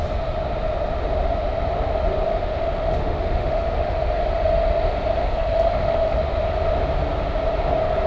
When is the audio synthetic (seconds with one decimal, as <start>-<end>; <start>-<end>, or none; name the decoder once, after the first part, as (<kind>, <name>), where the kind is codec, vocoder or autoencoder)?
2.3-4.2 (autoencoder, DAC-VAE); 5.2-6.4